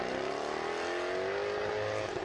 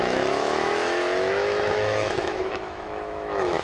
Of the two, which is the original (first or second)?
first